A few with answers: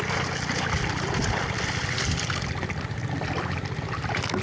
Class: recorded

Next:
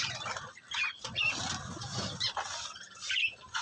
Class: remade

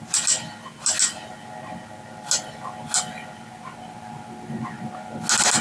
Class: recorded